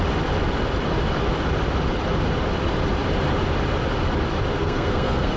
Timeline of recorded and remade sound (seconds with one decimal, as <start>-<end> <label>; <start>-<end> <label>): 0.0-4.6 recorded; 4.6-5.4 remade